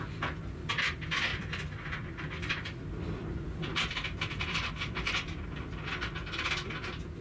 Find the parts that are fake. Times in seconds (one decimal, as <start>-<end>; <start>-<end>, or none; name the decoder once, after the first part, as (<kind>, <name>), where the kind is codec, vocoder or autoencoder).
1.3-5.6 (vocoder, BigVGAN v2)